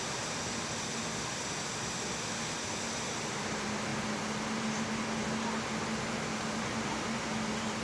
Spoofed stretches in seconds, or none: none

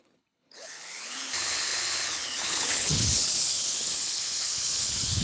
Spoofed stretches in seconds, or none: 0.0-5.2